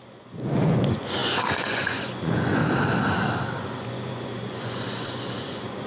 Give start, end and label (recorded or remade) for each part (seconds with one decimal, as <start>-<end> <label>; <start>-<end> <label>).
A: 0.0-2.6 remade; 2.6-3.6 recorded; 3.6-5.9 remade